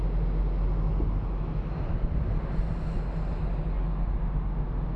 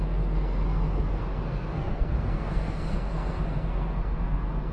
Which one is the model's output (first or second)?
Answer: second